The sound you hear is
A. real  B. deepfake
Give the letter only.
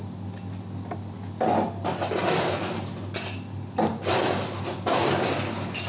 A